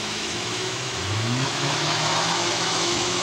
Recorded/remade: remade